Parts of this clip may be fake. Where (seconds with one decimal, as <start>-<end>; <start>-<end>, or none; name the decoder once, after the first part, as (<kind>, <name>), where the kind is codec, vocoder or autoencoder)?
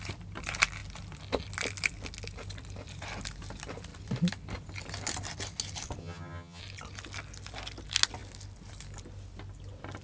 6.0-6.6 (vocoder, HiFi-GAN)